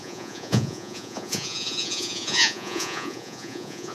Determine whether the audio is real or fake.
fake